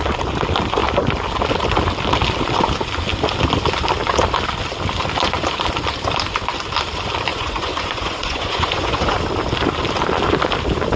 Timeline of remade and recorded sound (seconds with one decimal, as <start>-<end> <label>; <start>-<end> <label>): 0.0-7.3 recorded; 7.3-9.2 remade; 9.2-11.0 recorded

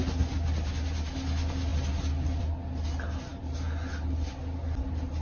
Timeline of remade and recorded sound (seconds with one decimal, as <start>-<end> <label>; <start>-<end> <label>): 0.0-5.2 recorded

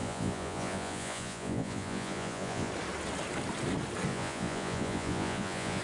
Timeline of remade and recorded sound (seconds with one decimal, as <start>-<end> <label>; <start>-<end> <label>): 0.0-2.7 remade; 2.7-4.1 recorded; 4.1-5.8 remade